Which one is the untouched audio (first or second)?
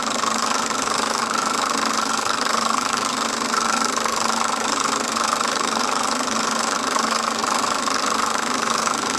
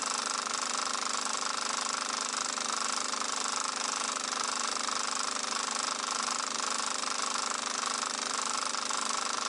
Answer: second